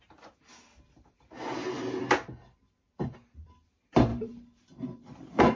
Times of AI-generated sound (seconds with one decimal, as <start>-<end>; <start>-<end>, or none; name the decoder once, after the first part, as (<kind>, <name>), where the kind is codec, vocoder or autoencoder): 4.1-5.6 (vocoder, BigVGAN v2)